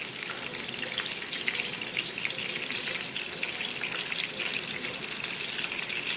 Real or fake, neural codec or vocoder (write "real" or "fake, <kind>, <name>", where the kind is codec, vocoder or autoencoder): real